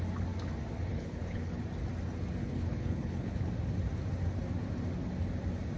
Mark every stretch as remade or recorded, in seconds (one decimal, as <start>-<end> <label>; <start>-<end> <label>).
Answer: 0.0-0.9 recorded; 0.9-1.6 remade; 1.6-2.4 recorded; 2.4-3.5 remade; 3.5-5.8 recorded